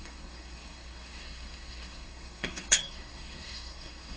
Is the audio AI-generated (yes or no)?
yes